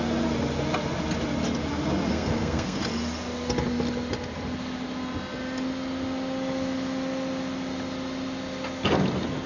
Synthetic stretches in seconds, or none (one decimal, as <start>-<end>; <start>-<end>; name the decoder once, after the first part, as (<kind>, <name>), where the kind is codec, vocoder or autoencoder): 2.1-2.8 (codec, SNAC)